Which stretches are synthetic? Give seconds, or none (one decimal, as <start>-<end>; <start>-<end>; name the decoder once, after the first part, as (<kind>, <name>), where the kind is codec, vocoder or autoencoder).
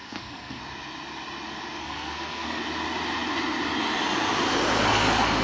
0.0-0.6 (codec, SNAC); 1.8-2.6